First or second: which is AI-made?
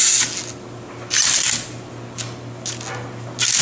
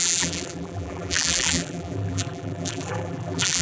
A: second